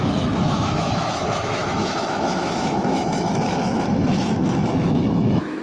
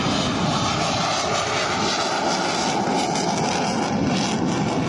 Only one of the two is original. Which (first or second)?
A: second